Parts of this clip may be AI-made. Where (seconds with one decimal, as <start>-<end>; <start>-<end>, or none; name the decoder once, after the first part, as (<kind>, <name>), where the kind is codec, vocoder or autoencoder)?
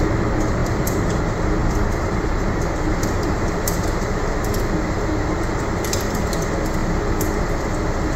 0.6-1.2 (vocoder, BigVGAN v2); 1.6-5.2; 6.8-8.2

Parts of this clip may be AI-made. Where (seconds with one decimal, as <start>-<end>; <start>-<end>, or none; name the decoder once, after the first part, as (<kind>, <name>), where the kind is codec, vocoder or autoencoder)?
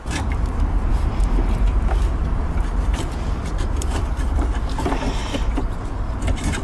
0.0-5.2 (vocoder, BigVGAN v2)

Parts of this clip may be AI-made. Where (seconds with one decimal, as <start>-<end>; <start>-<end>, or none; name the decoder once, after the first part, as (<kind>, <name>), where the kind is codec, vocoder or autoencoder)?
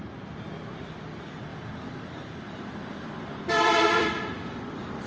1.5-4.6 (vocoder, BigVGAN v2)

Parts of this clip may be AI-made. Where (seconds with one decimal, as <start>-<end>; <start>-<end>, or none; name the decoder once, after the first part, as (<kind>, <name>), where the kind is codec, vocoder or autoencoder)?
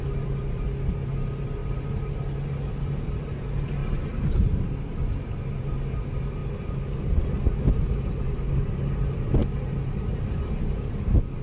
none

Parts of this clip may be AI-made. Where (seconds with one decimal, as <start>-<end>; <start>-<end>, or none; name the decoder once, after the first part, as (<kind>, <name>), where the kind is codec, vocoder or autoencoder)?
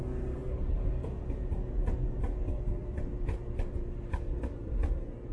2.8-5.3 (vocoder, BigVGAN v2)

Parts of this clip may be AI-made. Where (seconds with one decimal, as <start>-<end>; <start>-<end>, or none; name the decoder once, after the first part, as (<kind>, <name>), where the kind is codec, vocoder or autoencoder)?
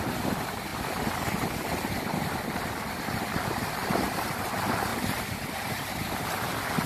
0.0-6.9 (vocoder, BigVGAN v2)